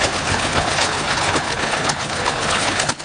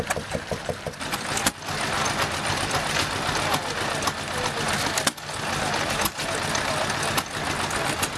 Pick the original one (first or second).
second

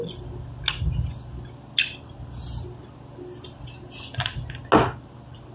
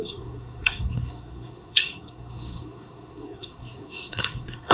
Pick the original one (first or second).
first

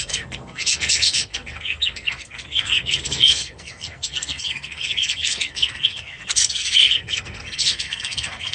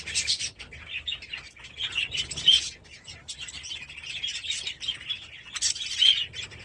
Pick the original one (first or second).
second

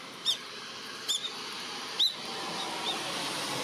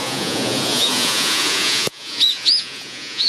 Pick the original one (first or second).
first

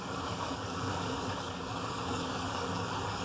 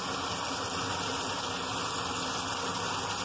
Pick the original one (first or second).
second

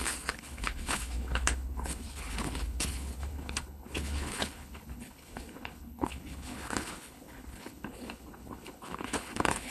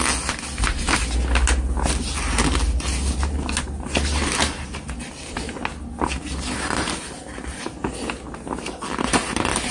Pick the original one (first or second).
second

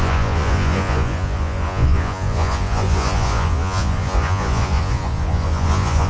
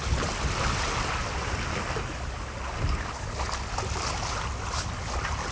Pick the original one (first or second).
second